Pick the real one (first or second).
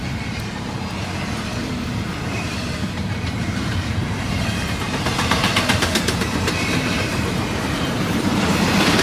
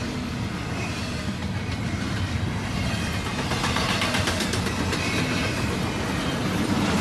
second